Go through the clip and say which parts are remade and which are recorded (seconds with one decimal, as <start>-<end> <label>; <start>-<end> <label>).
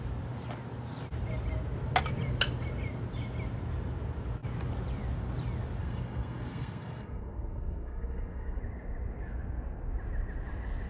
0.0-5.8 recorded; 5.8-8.6 remade; 8.6-10.9 recorded